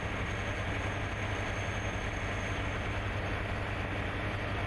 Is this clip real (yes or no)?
yes